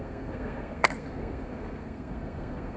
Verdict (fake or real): fake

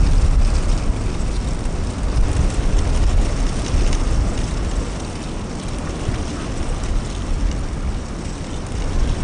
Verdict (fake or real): real